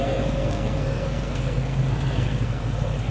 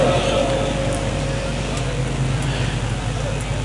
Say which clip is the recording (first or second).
second